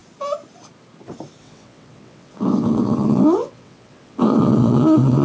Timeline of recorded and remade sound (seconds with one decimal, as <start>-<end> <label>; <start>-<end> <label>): 0.0-1.4 recorded; 1.4-5.2 remade